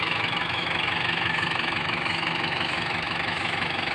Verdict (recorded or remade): remade